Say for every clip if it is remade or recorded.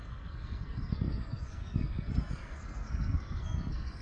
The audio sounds remade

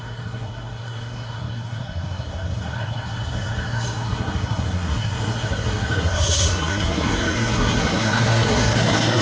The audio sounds remade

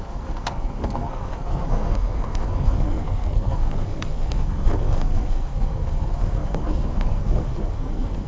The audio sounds remade